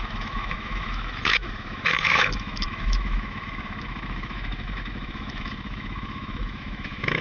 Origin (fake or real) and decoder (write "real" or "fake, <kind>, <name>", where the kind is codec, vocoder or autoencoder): fake, autoencoder, DAC-VAE